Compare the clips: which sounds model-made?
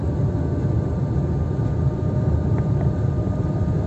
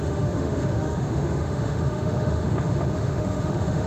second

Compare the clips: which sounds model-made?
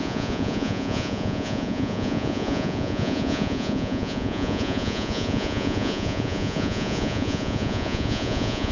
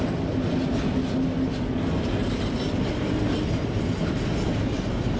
first